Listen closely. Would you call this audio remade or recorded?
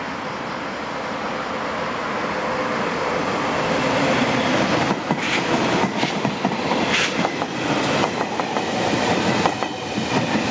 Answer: recorded